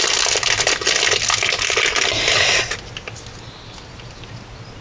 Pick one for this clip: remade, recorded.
recorded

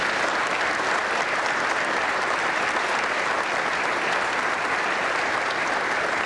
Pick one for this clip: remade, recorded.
recorded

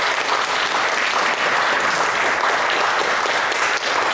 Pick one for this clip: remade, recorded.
recorded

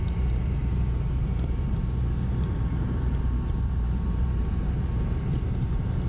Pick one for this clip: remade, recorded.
remade